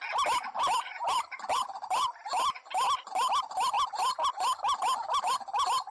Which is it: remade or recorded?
recorded